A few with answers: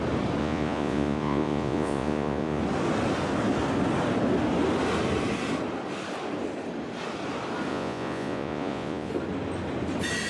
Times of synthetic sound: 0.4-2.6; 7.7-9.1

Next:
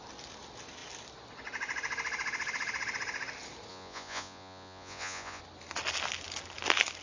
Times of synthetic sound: 3.7-5.4

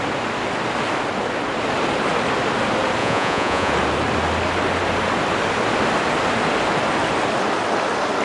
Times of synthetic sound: 3.0-3.7

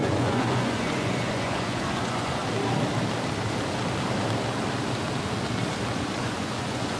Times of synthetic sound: 0.0-2.4; 6.2-7.0